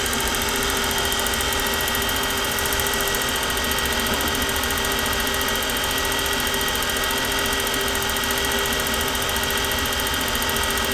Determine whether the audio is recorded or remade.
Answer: recorded